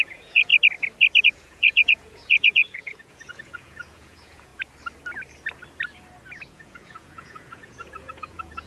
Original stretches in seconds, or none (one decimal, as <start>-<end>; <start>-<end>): 0.5-1.2; 4.5-6.5